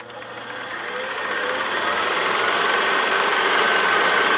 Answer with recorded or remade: recorded